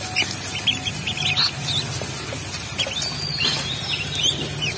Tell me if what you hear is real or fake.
real